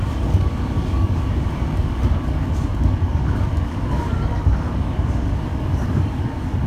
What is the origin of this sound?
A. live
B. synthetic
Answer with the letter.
B